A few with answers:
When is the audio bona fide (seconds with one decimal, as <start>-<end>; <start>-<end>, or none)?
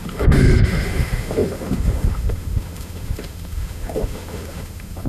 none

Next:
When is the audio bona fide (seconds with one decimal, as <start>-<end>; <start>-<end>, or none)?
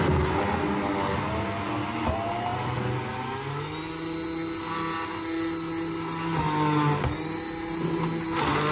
0.0-8.7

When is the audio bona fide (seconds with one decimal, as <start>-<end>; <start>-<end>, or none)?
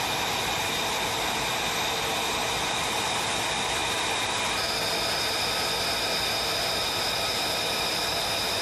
0.0-8.6